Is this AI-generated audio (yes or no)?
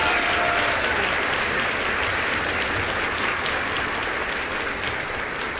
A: no